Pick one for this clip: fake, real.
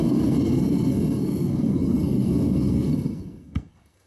fake